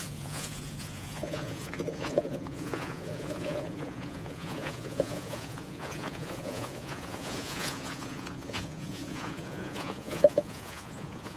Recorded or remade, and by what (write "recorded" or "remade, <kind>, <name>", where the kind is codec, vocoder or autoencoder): remade, vocoder, Vocos